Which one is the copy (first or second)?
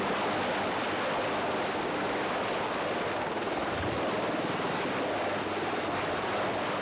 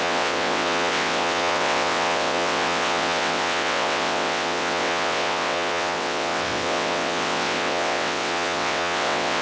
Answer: second